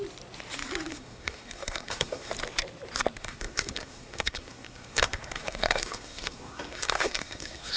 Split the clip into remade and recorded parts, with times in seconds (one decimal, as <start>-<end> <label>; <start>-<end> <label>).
0.0-0.9 recorded; 0.9-2.3 remade; 2.3-3.2 recorded; 3.2-7.8 remade